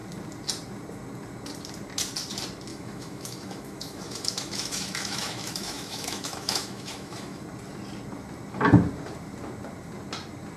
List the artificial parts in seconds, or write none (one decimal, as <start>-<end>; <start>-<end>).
2.7-7.4